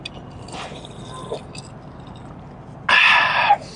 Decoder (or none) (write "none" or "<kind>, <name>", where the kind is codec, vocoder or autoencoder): none